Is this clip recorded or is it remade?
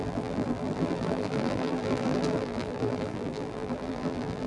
remade